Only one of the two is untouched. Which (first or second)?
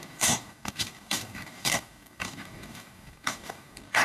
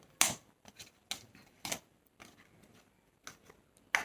second